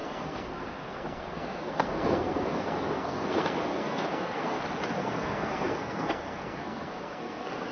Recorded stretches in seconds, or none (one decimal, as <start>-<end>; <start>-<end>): 4.6-5.0